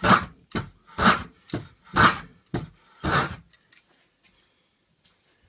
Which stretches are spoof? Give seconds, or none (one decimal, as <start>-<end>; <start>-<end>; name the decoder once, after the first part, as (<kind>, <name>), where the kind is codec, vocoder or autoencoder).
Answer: none